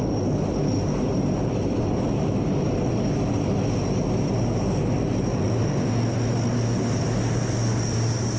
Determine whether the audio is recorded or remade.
recorded